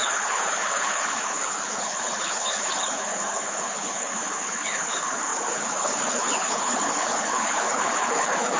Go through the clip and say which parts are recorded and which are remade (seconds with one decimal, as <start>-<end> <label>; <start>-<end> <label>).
0.0-8.6 remade